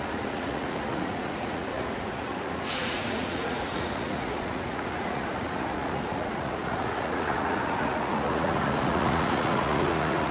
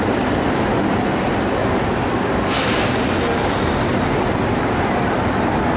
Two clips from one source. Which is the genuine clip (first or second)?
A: second